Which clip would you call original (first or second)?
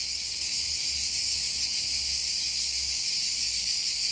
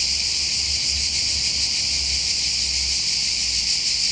second